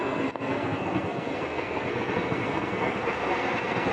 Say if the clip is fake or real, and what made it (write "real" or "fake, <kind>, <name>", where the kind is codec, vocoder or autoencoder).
fake, codec, SNAC